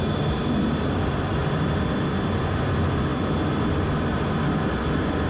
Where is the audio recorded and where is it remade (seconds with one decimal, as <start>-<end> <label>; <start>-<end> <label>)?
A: 0.0-5.3 recorded